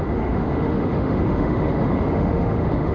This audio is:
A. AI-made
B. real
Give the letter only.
A